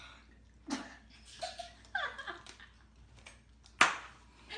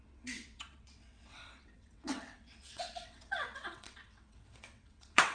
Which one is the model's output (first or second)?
second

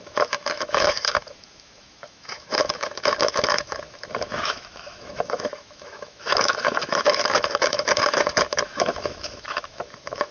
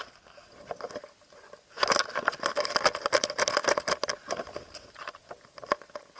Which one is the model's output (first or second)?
first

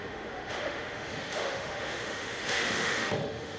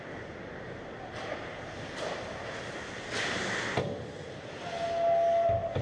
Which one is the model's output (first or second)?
first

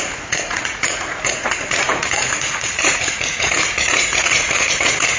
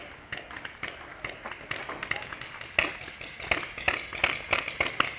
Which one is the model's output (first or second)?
first